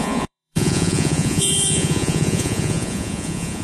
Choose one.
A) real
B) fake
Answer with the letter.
B